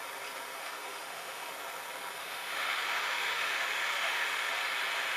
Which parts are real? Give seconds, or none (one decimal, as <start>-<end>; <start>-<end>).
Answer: 0.0-0.6; 1.5-2.2; 4.5-5.2